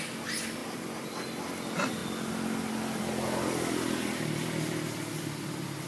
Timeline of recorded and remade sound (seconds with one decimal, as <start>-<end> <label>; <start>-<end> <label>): 0.0-5.9 recorded